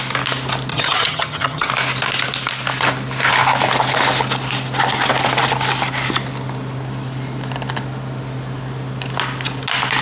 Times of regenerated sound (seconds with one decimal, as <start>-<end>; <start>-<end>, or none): 0.7-1.7